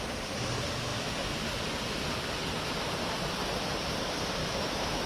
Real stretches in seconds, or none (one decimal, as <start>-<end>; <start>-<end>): 0.0-4.4